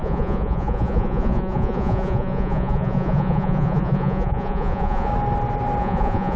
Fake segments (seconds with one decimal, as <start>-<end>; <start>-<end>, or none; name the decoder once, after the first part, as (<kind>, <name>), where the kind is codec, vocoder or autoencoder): 0.0-5.1 (vocoder, Vocos); 5.8-6.4